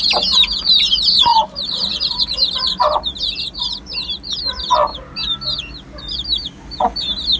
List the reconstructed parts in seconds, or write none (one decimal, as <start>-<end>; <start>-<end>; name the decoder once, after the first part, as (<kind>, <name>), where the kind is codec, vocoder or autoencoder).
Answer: 1.3-3.1 (vocoder, BigVGAN v2)